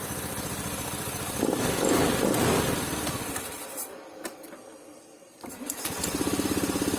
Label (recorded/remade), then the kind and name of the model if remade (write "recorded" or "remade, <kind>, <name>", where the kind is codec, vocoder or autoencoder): remade, vocoder, BigVGAN v2